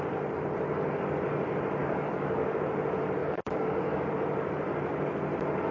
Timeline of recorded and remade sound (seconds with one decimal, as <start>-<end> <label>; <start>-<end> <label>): 0.0-1.8 recorded; 1.8-2.6 remade; 2.6-3.2 recorded; 3.2-4.1 remade; 4.1-5.7 recorded